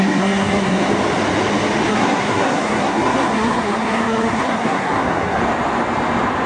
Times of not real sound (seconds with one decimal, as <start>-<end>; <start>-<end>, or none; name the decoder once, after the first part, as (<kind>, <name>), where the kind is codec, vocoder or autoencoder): 0.0-0.9 (codec, SNAC); 1.9-5.4